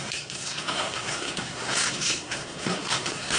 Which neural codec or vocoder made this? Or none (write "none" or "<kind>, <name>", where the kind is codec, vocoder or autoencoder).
codec, SNAC